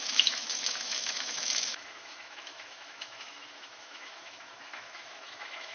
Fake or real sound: fake